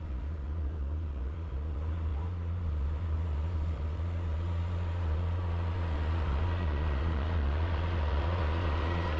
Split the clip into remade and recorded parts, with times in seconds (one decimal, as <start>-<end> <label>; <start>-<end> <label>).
0.0-9.2 remade